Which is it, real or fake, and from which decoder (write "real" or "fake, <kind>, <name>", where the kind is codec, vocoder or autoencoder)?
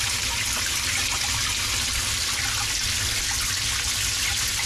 real